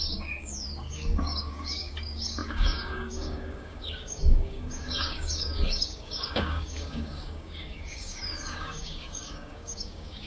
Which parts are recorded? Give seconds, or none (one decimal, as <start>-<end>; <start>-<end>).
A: none